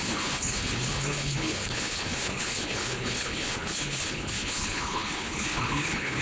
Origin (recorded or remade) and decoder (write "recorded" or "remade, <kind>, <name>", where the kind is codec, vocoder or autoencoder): remade, codec, HILCodec